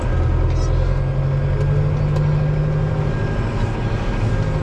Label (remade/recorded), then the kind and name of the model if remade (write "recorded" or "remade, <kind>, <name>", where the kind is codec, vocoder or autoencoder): recorded